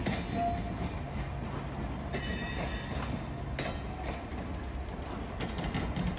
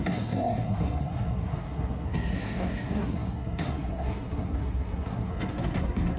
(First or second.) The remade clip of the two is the second